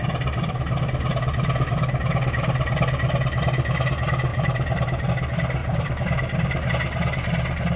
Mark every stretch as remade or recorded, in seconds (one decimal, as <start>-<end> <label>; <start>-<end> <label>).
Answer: 0.0-4.3 recorded; 4.3-5.1 remade; 5.1-5.6 recorded; 5.6-6.7 remade; 6.7-7.8 recorded